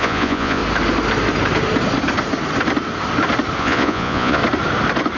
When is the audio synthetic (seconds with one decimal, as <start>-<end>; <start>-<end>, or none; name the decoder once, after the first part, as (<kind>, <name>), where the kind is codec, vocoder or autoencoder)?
0.0-0.6 (vocoder, Vocos); 3.6-4.4

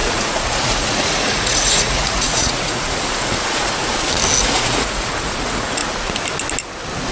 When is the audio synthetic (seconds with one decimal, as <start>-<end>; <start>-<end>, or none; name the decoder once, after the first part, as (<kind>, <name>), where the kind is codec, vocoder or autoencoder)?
0.0-3.9 (vocoder, Vocos); 4.4-5.8